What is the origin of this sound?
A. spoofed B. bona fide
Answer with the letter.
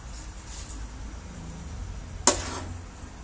B